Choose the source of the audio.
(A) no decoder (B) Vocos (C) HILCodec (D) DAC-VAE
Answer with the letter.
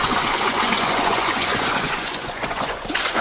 B